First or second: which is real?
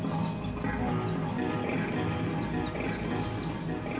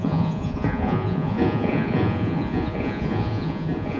first